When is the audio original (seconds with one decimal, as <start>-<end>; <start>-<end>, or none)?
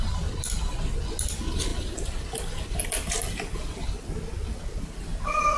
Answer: 0.0-5.6